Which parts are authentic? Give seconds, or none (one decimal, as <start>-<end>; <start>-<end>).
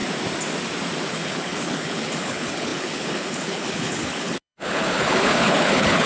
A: 0.0-1.1